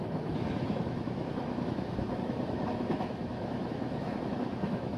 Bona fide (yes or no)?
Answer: no